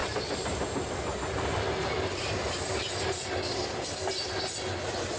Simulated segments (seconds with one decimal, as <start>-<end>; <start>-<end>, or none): none